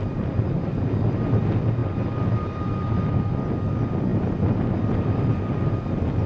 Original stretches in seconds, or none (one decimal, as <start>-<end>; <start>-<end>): 0.0-6.3